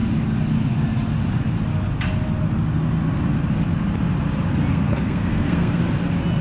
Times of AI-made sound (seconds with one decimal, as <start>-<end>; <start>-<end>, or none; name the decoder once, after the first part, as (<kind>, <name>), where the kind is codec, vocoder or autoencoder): 4.7-5.8 (codec, SNAC)